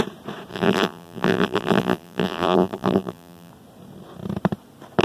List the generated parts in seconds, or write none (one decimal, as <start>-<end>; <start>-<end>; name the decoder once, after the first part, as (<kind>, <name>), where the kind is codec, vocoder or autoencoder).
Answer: 0.5-3.5 (vocoder, BigVGAN v2)